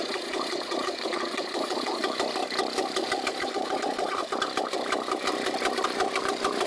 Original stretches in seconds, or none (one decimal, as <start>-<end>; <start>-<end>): 2.0-3.4; 4.2-6.7